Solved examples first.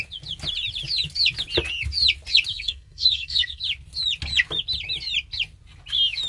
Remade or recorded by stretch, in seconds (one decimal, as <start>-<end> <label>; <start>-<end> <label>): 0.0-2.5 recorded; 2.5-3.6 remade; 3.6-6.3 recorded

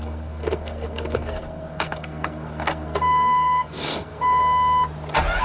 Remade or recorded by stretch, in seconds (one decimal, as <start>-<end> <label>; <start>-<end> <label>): 0.0-4.4 remade; 4.4-5.4 recorded

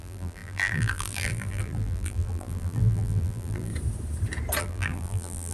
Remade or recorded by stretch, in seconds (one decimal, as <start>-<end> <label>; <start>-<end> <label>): 0.0-3.7 remade; 3.7-4.6 recorded; 4.6-5.5 remade

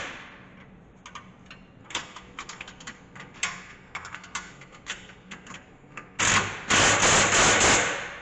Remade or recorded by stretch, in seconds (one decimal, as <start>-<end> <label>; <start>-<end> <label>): 0.0-1.8 recorded; 1.8-6.2 remade; 6.2-8.2 recorded

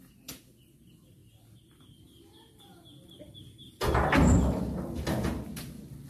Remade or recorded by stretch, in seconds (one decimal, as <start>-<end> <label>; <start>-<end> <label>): 0.0-6.1 recorded

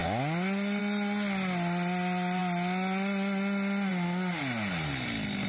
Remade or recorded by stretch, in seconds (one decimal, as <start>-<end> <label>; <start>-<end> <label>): 0.0-5.5 recorded

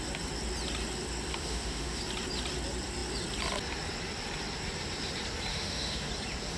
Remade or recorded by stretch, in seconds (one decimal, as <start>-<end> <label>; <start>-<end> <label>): 0.0-1.3 recorded; 1.3-2.0 remade; 2.0-5.5 recorded; 5.5-6.1 remade; 6.1-6.6 recorded

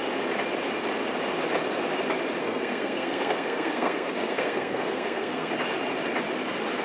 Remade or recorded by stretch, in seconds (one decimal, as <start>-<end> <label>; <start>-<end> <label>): 0.0-2.4 recorded; 2.4-5.5 remade; 5.5-6.8 recorded